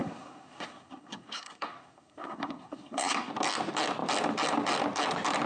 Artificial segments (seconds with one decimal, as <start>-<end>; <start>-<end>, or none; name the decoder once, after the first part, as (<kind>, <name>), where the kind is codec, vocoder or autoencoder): 0.0-3.3 (codec, SNAC)